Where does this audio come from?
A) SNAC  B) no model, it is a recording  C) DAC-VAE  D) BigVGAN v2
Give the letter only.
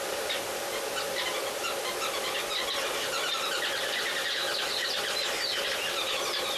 B